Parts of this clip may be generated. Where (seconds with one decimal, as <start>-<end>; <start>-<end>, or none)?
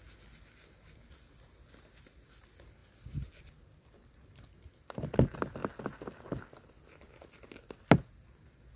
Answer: none